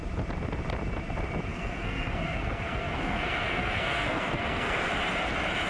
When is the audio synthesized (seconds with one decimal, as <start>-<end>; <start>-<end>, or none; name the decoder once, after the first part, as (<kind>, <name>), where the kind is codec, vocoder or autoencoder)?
1.5-4.9 (codec, SNAC)